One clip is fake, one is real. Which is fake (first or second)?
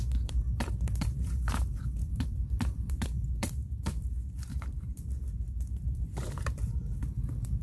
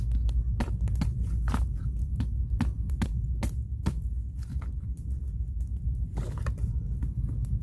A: first